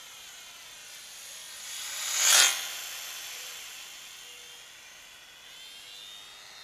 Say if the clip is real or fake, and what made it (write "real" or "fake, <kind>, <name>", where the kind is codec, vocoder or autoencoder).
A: real